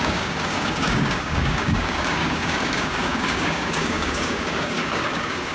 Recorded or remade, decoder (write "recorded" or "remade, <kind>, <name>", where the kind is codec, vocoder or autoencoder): remade, codec, DAC